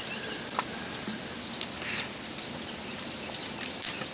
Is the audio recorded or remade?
recorded